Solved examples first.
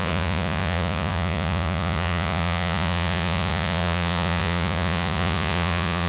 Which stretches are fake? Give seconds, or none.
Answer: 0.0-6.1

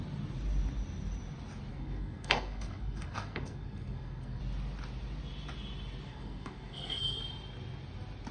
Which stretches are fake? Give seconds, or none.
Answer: 1.7-4.4; 6.1-7.2

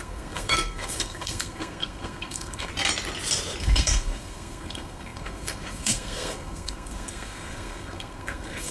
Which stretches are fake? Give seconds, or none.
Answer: 0.0-2.7; 3.6-8.7

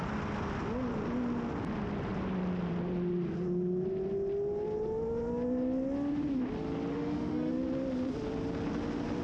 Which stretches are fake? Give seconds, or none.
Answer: 6.9-7.5

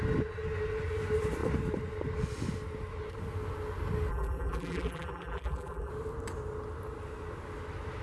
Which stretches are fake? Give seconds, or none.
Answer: 4.1-5.9